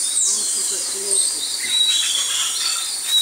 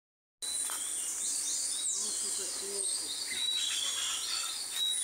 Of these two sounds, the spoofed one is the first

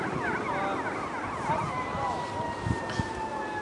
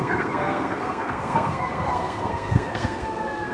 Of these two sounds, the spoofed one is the second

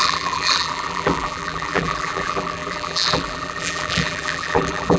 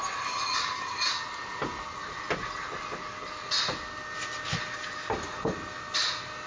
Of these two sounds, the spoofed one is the first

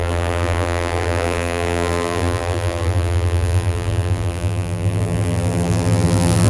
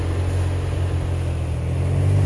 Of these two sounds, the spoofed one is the first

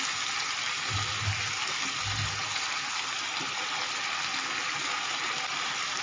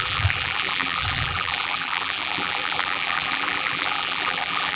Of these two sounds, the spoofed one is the second